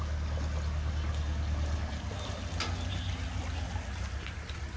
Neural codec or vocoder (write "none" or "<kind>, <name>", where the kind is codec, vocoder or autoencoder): none